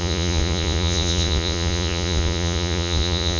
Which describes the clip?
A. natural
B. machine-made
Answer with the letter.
B